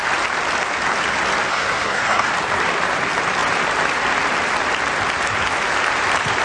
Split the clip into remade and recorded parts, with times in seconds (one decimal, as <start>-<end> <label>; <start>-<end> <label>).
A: 0.0-1.5 recorded; 1.5-2.3 remade; 2.3-6.4 recorded